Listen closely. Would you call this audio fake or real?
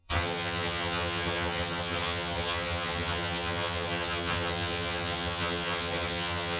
fake